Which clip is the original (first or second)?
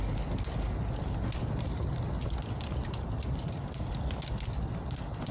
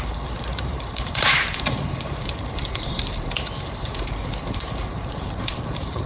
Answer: first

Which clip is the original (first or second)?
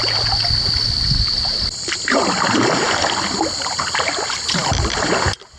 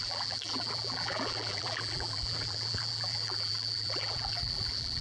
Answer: first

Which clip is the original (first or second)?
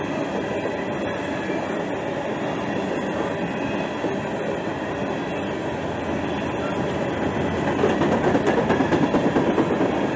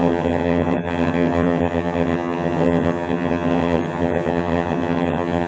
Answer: first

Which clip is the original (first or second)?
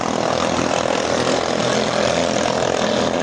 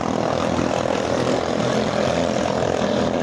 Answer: first